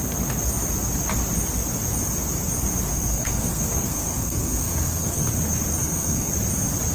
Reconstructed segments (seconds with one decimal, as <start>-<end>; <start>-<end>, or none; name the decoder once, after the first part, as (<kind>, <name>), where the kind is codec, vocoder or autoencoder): 2.9-5.3 (codec, SNAC); 5.8-6.3